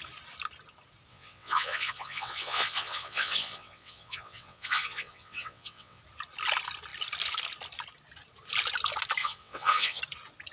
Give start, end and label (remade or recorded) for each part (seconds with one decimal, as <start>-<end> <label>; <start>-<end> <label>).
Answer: 0.0-1.1 recorded; 1.1-6.0 remade; 6.0-9.2 recorded; 9.2-10.0 remade; 10.0-10.5 recorded